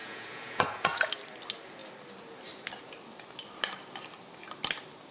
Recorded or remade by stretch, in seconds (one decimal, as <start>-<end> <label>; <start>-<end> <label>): 0.0-1.1 remade; 1.1-5.1 recorded